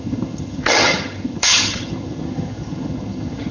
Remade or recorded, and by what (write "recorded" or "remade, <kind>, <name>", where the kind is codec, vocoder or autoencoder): remade, vocoder, HiFi-GAN